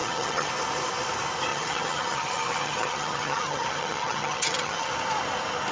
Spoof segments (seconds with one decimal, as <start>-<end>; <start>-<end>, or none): 0.0-0.5; 1.5-4.9